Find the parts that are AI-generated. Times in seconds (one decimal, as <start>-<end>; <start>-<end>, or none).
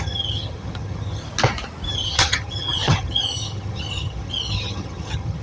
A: 0.0-1.2; 1.9-5.4